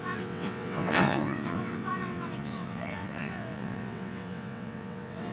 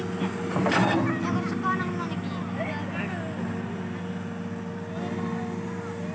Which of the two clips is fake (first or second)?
first